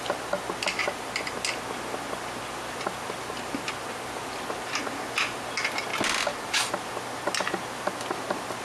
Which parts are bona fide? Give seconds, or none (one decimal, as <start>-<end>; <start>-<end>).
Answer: 0.0-8.6